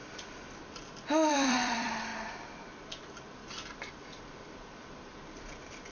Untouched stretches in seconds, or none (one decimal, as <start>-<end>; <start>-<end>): 0.0-1.3; 2.1-2.9; 3.4-3.9